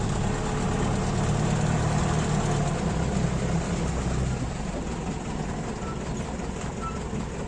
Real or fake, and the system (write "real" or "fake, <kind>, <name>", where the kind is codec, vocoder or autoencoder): real